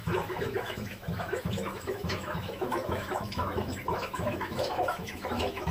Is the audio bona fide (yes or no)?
no